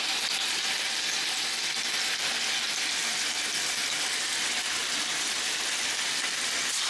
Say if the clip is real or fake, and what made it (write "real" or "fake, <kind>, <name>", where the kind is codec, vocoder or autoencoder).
real